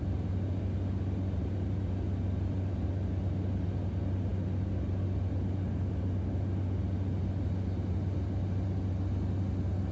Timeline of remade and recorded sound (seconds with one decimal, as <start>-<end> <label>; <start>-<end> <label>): 0.0-9.9 recorded